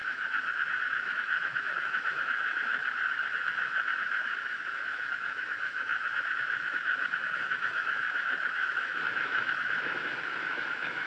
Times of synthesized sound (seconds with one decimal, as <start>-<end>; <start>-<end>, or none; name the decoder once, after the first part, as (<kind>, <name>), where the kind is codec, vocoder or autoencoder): 0.0-2.8 (autoencoder, DAC-VAE); 3.4-11.1